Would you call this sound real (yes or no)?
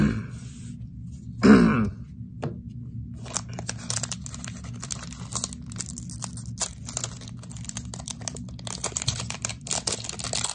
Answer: yes